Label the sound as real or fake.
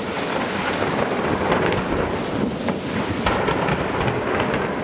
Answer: real